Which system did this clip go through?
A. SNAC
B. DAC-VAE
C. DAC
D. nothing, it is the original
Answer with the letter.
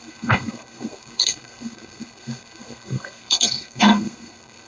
A